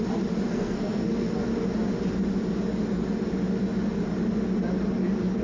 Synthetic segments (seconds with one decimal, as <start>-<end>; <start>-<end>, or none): 0.5-1.3